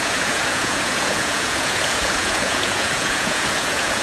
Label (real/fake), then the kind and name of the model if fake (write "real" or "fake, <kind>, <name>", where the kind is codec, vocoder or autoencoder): fake, vocoder, Vocos